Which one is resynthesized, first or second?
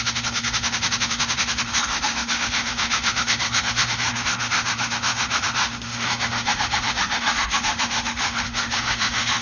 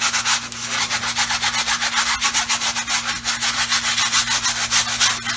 first